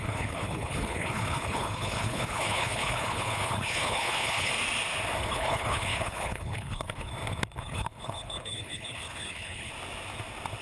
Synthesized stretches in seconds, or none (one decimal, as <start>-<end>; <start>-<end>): 0.0-4.5; 5.3-7.1; 7.6-9.7